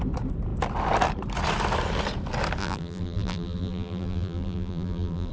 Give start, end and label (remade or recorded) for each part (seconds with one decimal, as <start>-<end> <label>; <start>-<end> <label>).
0.0-2.6 recorded; 2.6-5.3 remade